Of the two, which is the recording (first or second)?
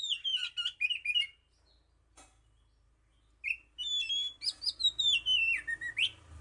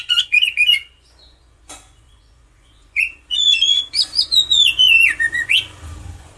first